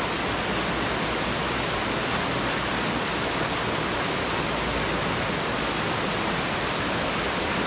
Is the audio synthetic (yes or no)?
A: no